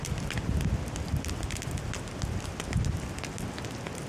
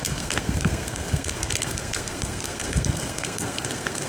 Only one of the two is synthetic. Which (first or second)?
second